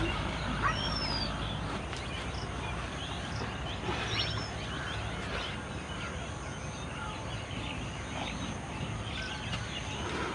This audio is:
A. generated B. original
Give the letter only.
B